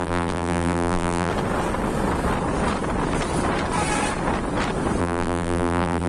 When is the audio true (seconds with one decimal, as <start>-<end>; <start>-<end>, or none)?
1.3-5.0